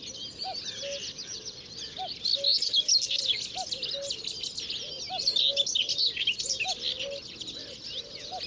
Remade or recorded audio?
recorded